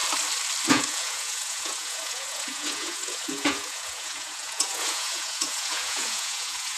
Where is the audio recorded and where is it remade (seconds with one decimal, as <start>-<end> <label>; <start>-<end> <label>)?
0.0-0.7 recorded; 0.7-6.8 remade